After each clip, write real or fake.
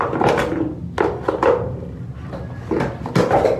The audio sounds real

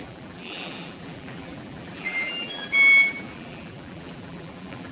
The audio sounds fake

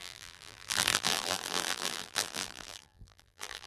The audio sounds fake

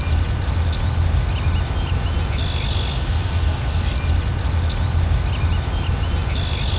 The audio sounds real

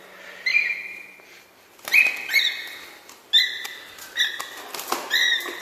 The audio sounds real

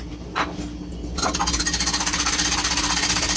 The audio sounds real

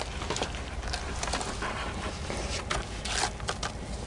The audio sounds real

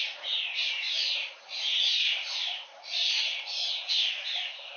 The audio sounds fake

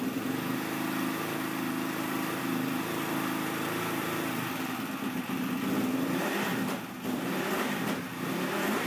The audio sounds fake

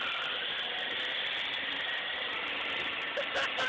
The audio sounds fake